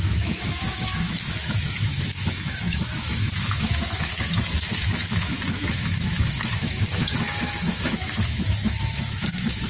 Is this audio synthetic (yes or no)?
yes